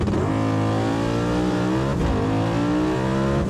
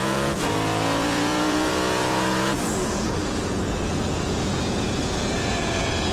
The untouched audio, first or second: first